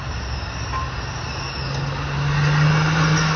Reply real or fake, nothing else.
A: real